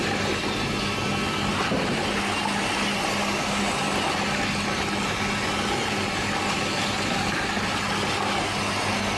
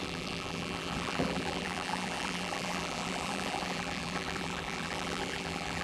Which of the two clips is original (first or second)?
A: first